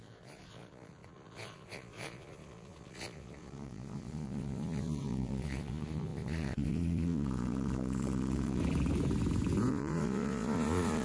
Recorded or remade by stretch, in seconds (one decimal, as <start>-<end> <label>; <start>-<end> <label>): 0.0-8.6 remade; 8.6-9.7 recorded; 9.7-11.0 remade